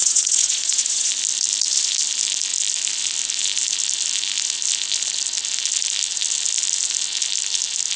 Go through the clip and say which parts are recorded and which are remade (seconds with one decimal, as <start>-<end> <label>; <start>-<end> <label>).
0.0-1.1 remade; 1.1-8.0 recorded

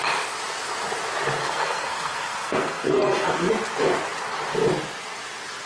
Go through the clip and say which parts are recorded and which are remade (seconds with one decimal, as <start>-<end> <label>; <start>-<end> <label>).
0.0-1.4 recorded; 1.4-3.5 remade; 3.5-5.7 recorded